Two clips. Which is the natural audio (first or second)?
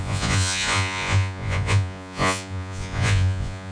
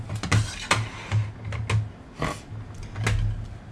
second